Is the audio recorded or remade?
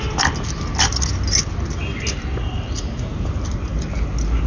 recorded